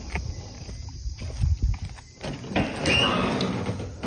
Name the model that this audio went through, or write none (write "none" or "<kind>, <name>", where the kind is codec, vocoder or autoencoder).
none